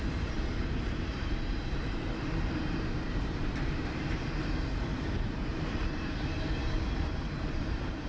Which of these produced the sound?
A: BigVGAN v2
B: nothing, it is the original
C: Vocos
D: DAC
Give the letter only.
A